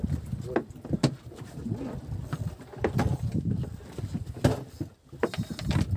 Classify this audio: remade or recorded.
recorded